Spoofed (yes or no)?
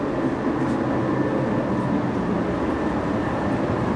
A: no